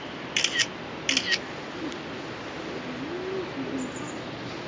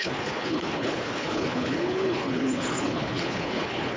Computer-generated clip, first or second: second